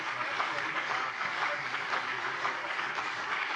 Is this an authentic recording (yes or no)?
no